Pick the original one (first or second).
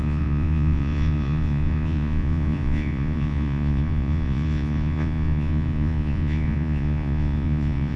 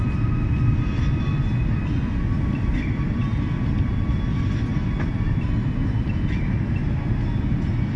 second